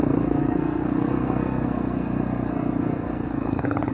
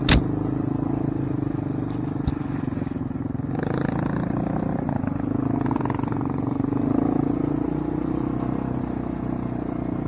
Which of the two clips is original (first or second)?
second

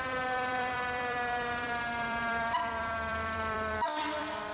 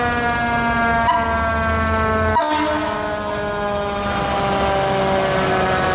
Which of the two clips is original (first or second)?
second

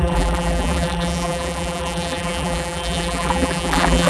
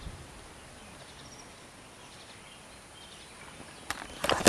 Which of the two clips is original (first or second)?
second